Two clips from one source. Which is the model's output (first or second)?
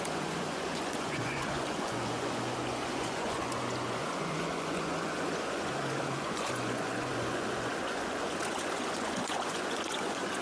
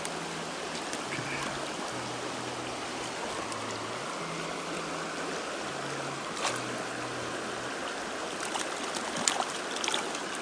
first